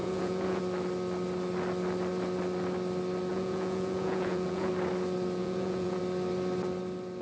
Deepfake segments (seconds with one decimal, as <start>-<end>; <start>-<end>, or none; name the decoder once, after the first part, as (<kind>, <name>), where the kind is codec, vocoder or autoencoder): 0.0-0.6 (vocoder, Vocos); 3.3-4.7; 5.4-6.0